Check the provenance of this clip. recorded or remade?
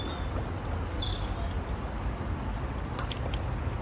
recorded